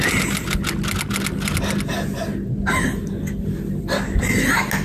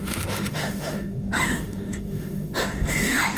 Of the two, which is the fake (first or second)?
second